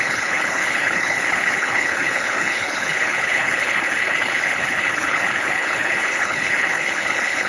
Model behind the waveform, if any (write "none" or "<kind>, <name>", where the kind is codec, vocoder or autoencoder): codec, HILCodec